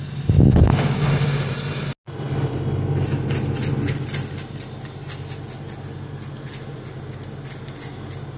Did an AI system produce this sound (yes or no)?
no